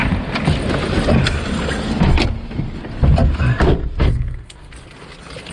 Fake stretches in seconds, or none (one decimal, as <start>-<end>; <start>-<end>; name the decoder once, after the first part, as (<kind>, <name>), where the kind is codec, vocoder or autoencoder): 4.0-4.7 (codec, SNAC)